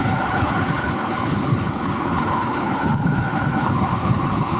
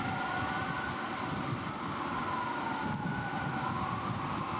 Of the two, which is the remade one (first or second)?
first